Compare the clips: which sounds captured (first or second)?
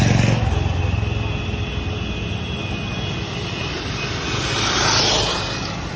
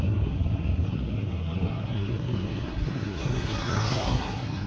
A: first